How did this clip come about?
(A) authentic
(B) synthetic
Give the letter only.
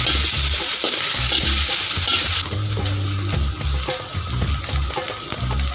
A